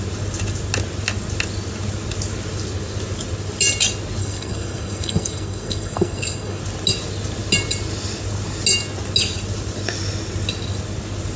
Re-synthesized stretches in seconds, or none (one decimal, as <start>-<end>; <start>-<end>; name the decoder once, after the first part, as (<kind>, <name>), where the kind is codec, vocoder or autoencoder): 4.2-6.6 (codec, SNAC)